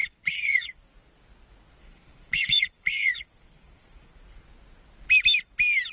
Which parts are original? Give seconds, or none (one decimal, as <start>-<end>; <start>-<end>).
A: 0.8-1.8; 4.1-5.9